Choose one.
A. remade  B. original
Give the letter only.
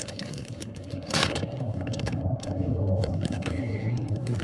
A